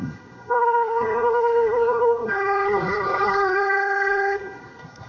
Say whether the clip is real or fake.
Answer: fake